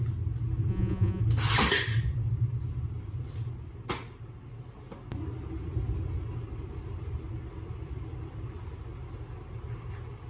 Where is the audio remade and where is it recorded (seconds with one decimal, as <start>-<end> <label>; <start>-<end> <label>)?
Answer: 0.0-0.7 recorded; 0.7-1.2 remade; 1.2-10.3 recorded